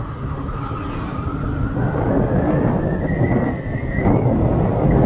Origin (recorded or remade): recorded